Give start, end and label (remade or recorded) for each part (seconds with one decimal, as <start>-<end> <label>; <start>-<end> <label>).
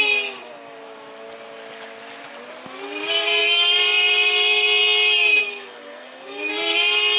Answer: 0.0-5.4 recorded; 5.4-6.5 remade; 6.5-7.2 recorded